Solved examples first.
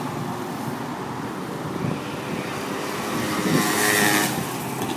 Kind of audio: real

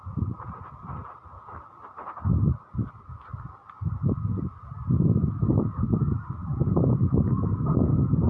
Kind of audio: real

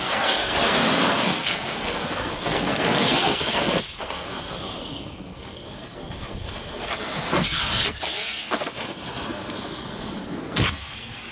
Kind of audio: fake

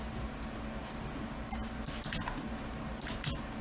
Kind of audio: real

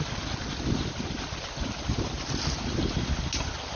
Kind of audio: real